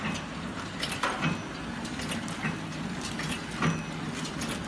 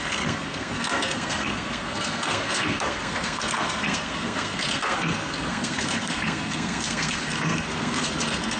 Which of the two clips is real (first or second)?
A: first